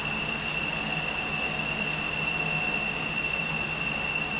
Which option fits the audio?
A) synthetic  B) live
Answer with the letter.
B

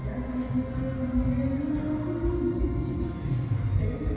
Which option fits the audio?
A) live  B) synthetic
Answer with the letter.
A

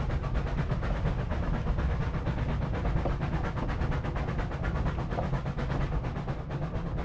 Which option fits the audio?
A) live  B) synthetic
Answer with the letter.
A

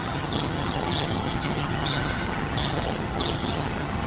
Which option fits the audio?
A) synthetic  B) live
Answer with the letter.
A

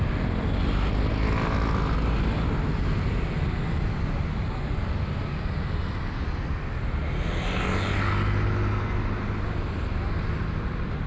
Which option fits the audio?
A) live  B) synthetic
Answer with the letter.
A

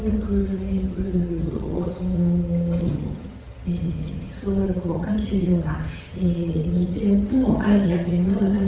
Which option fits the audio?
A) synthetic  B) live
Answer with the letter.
A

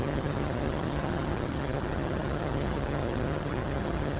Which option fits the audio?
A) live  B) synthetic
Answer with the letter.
B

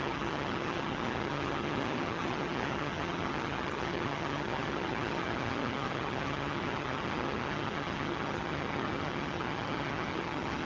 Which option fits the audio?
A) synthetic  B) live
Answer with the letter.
A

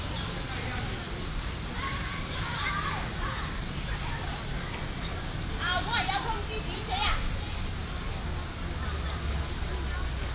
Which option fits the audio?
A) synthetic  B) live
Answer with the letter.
B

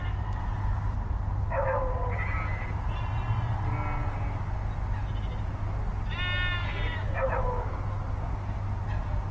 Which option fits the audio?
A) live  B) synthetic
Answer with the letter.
A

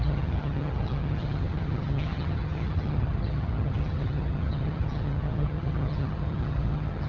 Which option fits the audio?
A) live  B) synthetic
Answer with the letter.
B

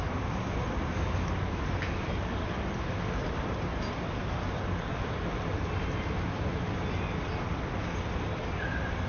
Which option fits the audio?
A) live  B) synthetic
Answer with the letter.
A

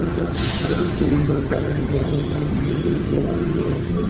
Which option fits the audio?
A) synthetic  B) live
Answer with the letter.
A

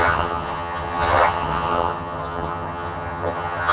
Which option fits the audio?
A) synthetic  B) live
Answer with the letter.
A